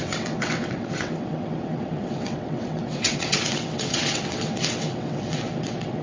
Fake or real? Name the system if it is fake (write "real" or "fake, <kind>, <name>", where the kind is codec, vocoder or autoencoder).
fake, vocoder, WaveNeXt